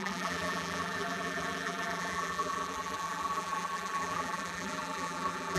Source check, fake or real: fake